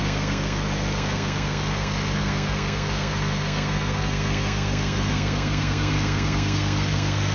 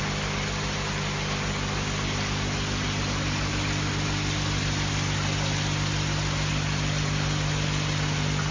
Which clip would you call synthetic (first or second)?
first